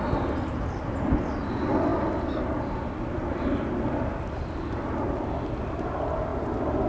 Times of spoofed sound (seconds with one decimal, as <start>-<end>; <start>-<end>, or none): none